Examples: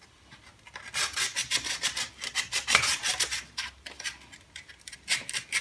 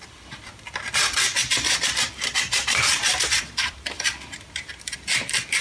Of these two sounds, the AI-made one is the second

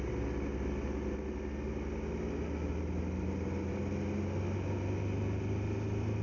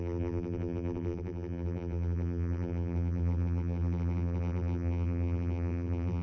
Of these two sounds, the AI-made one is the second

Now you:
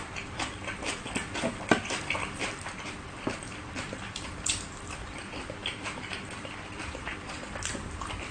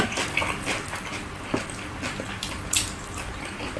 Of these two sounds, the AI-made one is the first